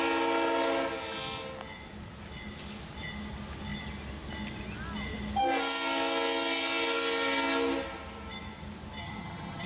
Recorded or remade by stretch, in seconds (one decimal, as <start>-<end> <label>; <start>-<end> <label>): 0.0-9.0 recorded; 9.0-9.7 remade